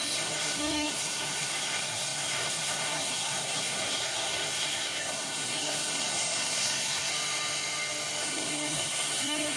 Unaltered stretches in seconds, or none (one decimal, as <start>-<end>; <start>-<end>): 7.1-8.2